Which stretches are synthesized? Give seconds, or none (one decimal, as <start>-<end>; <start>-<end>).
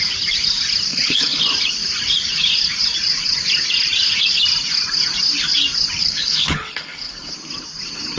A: 0.9-1.4; 6.0-7.3